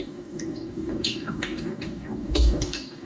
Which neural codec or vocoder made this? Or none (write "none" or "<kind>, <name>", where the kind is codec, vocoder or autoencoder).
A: codec, DAC